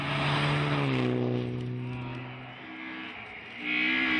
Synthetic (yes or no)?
no